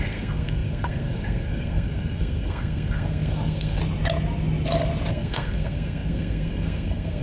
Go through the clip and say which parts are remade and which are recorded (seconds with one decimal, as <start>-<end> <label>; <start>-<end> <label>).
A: 0.0-3.8 remade; 3.8-5.1 recorded; 5.1-7.2 remade